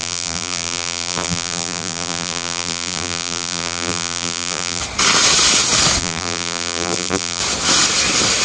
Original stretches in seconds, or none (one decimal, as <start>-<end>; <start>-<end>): 4.8-6.0; 7.4-8.4